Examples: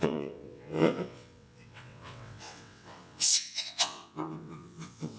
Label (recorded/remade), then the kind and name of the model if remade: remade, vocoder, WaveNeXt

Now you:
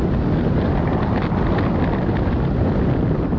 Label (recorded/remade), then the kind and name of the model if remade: recorded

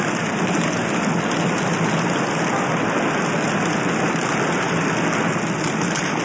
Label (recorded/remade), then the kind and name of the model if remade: recorded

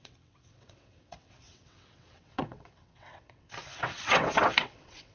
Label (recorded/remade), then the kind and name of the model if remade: remade, vocoder, WaveNeXt